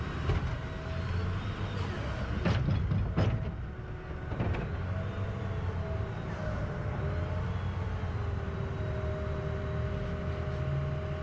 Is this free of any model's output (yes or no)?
yes